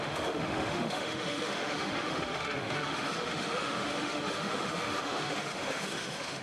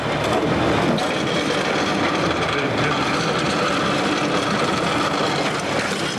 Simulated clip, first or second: first